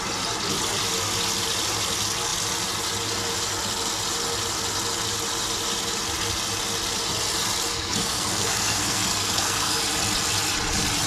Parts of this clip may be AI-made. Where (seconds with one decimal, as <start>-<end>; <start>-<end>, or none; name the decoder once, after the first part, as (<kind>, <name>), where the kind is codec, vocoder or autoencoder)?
7.7-9.8 (codec, SNAC)